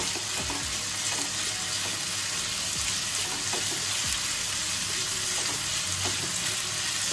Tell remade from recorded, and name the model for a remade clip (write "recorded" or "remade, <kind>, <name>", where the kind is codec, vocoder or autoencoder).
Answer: recorded